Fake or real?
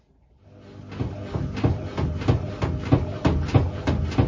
real